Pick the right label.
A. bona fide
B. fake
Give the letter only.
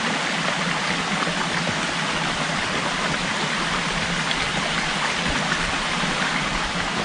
A